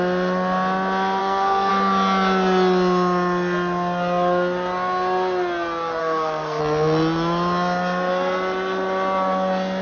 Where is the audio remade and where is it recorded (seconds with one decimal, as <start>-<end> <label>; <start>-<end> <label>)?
0.0-1.2 recorded; 1.2-1.7 remade; 1.7-6.0 recorded; 6.0-6.6 remade; 6.6-9.8 recorded